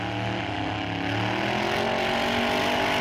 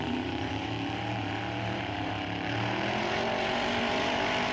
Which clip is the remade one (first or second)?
second